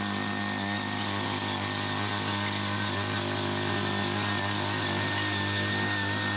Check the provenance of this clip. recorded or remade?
recorded